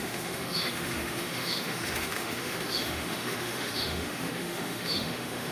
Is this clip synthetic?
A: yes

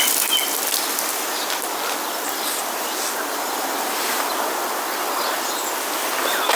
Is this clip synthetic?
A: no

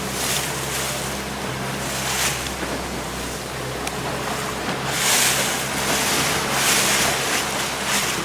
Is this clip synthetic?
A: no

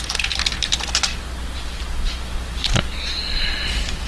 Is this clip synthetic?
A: no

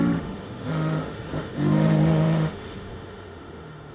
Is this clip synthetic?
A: yes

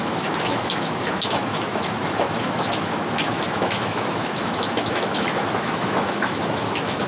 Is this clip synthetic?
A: yes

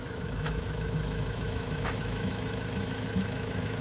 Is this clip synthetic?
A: yes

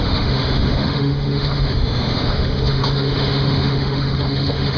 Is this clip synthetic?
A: yes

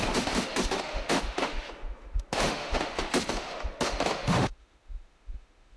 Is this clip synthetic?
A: yes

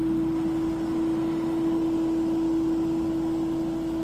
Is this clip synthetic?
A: no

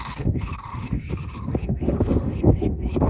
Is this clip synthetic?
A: yes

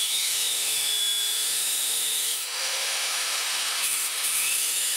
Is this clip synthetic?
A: yes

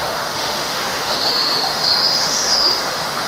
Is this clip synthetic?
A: yes